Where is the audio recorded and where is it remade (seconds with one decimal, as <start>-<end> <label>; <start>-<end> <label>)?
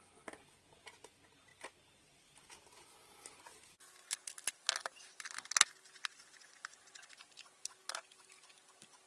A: 0.0-9.1 recorded